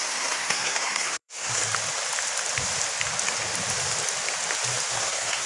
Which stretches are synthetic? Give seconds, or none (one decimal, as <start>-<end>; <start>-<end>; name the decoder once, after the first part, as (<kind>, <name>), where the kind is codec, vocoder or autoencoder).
0.0-1.6 (codec, SNAC); 4.9-5.5